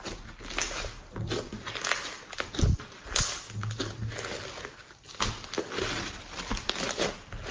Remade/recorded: recorded